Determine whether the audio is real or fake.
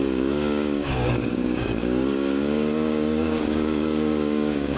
fake